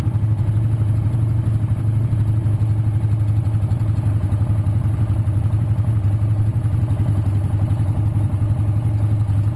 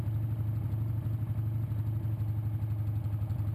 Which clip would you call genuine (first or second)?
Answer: second